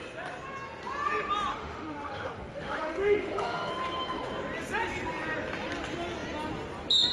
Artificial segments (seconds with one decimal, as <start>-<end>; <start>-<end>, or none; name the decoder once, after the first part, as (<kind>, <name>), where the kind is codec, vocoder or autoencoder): 1.5-3.7 (autoencoder, DAC-VAE)